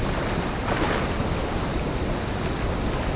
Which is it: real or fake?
real